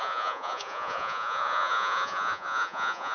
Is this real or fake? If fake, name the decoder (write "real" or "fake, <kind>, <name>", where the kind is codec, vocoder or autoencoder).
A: fake, vocoder, Vocos